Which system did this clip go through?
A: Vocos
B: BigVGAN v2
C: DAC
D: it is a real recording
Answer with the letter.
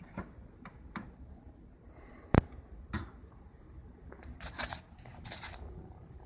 B